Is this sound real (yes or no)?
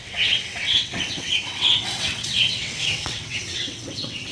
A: no